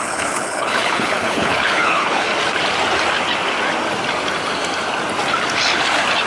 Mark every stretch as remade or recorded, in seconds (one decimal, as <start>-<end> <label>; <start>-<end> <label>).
0.0-2.3 remade; 2.3-6.3 recorded